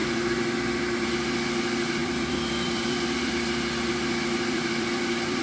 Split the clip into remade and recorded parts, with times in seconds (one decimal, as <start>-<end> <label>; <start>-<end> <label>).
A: 0.0-0.8 remade; 0.8-2.0 recorded; 2.0-5.4 remade